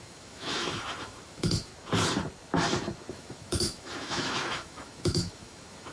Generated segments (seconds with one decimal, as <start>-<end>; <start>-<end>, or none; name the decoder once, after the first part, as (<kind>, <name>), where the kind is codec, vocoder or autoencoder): 0.0-1.7 (autoencoder, DAC-VAE); 3.1-5.9